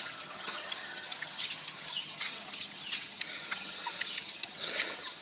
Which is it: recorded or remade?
remade